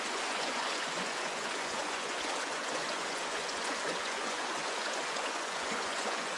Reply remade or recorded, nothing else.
remade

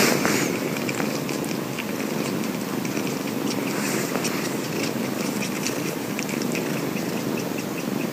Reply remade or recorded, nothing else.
recorded